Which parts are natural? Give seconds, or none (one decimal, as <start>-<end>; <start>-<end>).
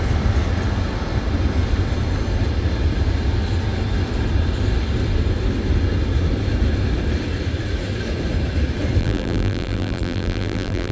0.0-9.0